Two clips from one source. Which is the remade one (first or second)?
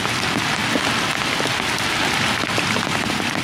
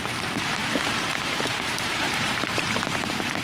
second